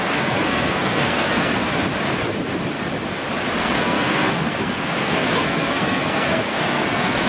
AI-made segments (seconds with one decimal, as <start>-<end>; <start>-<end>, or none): 0.0-1.7; 3.6-7.3